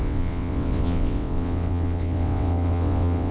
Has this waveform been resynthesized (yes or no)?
yes